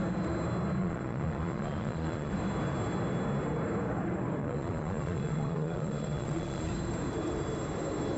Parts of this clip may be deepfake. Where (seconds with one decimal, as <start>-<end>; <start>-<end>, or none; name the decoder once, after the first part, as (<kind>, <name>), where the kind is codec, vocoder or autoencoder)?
0.8-2.3 (vocoder, Vocos); 4.4-6.7